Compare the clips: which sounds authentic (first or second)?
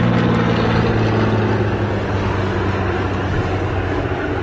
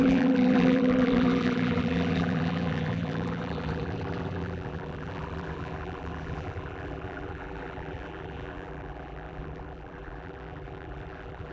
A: first